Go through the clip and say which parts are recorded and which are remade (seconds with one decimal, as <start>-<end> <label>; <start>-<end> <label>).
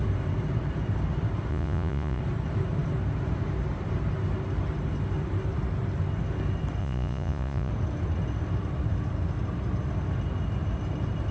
0.0-1.5 recorded; 1.5-2.2 remade; 2.2-6.8 recorded; 6.8-7.7 remade; 7.7-11.3 recorded